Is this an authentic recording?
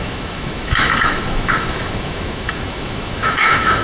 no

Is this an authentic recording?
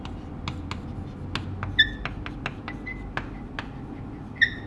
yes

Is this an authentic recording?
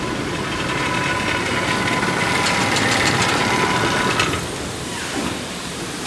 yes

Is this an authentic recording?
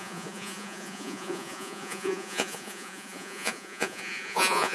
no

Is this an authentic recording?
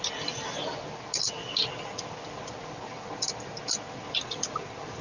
yes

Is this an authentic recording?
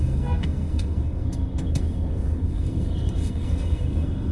no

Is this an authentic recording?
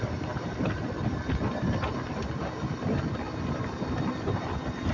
no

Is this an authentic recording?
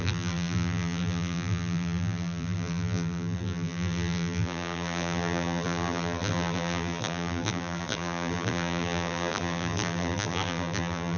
no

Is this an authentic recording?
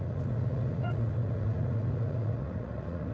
no